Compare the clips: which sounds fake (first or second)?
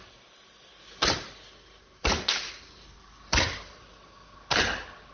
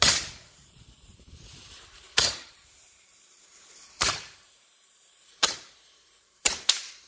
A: second